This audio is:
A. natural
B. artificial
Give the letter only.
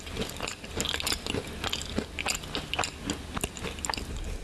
A